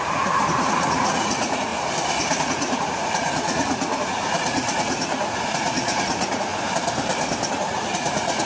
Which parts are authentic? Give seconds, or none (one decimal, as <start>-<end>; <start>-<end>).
1.7-2.4; 6.5-7.5